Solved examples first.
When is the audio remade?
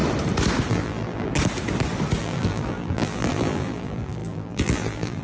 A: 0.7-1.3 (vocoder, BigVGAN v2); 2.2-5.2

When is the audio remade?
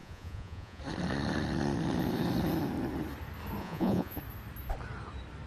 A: 0.0-0.8 (vocoder, Vocos); 3.6-4.2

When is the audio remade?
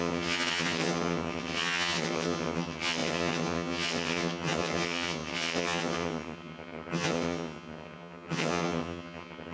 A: 0.0-9.5 (vocoder, HiFi-GAN)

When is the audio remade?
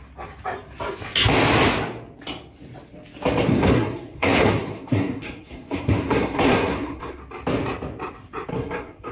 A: 3.5-7.2 (codec, SNAC); 8.5-9.1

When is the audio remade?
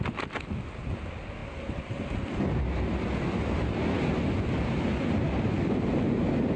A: none